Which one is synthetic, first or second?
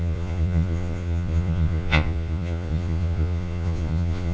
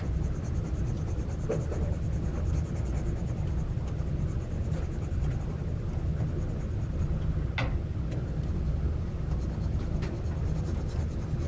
first